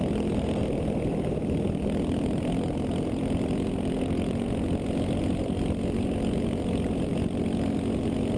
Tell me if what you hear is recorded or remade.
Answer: recorded